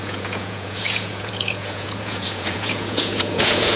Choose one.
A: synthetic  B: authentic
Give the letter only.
A